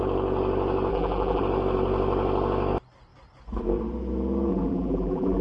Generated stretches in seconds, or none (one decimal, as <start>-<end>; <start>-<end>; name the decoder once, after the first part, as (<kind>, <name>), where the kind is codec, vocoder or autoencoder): 0.9-1.4 (vocoder, BigVGAN v2); 4.5-5.4